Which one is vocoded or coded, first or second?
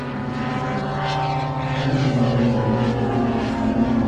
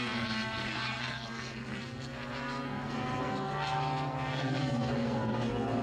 second